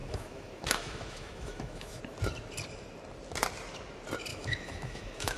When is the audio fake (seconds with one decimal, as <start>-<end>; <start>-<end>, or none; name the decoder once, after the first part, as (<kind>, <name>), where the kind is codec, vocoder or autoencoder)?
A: 0.0-2.0 (autoencoder, DAC-VAE); 4.3-5.4